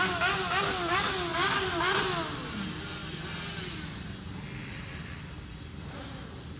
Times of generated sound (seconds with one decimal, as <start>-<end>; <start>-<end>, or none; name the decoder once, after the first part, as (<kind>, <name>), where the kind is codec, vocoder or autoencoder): 1.3-2.0 (vocoder, BigVGAN v2)